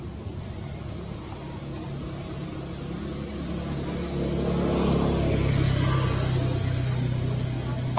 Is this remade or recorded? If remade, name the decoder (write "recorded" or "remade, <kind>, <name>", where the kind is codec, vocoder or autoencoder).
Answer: recorded